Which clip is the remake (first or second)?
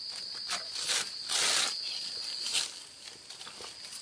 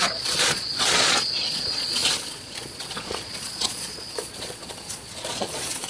second